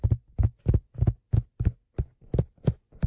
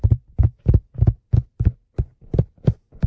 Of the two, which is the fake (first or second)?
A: second